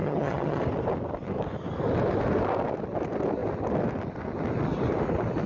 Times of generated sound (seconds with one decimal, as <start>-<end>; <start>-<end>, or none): 0.0-0.6